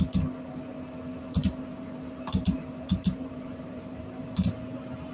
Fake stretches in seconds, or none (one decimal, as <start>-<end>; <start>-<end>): 1.4-4.5